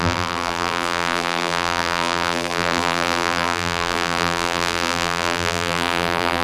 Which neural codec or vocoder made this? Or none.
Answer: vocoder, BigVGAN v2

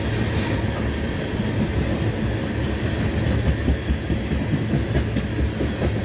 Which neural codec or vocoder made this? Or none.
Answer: none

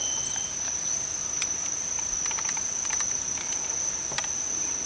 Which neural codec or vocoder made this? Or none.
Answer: none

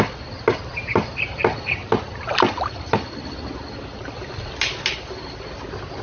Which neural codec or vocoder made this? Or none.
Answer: none